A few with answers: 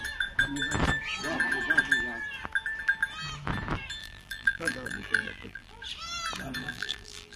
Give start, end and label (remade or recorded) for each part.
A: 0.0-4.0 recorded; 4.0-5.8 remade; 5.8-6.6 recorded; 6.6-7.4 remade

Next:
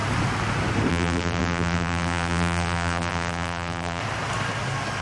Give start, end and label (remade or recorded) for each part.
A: 0.0-0.9 recorded; 0.9-4.0 remade; 4.0-5.0 recorded

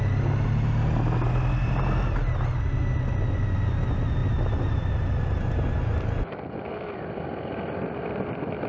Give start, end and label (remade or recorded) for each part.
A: 0.0-8.7 recorded

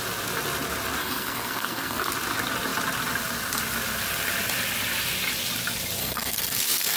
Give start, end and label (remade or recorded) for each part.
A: 0.0-1.0 recorded; 1.0-2.1 remade; 2.1-6.0 recorded; 6.0-7.0 remade